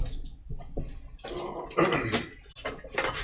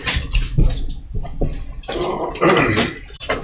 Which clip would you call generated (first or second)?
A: second